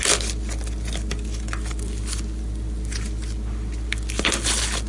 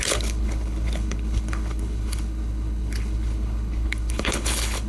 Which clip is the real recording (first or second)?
first